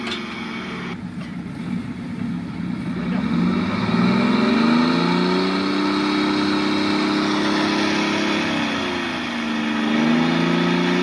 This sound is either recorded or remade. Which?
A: recorded